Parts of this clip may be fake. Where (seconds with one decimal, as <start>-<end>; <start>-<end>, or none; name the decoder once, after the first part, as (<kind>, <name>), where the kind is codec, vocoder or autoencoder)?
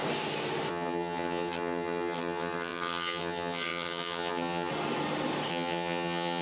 0.7-4.7 (vocoder, HiFi-GAN); 5.5-6.4